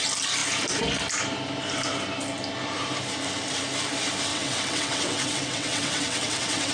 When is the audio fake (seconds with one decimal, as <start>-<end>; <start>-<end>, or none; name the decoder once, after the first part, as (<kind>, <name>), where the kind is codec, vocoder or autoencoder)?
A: 4.3-6.7 (vocoder, WaveNeXt)